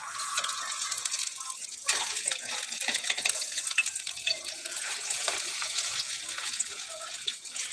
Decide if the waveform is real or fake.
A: fake